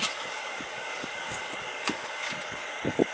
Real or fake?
fake